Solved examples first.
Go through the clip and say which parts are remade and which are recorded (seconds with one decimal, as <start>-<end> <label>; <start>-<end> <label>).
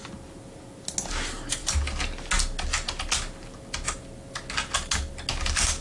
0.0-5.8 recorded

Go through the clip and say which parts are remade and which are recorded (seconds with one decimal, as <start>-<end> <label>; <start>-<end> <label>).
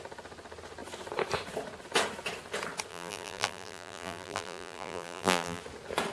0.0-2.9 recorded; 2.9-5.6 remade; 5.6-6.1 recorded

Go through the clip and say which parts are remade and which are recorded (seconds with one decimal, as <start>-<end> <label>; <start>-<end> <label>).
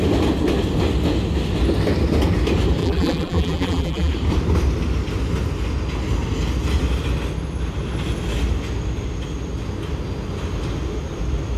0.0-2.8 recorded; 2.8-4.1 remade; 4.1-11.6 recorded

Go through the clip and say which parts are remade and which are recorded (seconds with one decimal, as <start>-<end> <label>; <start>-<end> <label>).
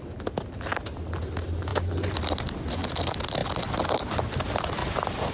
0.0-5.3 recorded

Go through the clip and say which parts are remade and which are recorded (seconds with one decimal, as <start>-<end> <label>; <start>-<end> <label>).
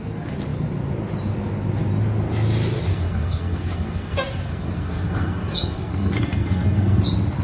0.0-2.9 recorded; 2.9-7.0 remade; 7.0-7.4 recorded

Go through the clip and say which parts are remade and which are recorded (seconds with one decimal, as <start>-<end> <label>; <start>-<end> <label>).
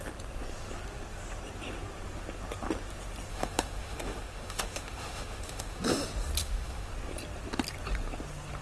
0.0-3.3 recorded; 3.3-5.8 remade; 5.8-6.4 recorded; 6.4-6.9 remade; 6.9-8.6 recorded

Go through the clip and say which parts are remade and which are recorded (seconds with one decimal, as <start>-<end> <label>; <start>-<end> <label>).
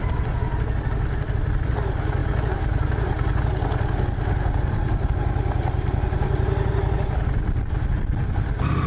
0.0-8.9 recorded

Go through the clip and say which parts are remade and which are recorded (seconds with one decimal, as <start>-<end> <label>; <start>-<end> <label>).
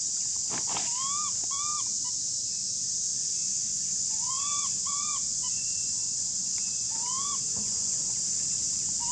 0.0-3.1 recorded; 3.1-8.1 remade; 8.1-9.1 recorded